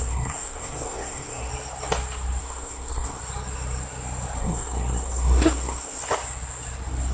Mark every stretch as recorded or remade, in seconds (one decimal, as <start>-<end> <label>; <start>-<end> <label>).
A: 0.0-1.5 remade; 1.5-2.4 recorded; 2.4-3.2 remade; 3.2-4.4 recorded; 4.4-6.0 remade; 6.0-7.1 recorded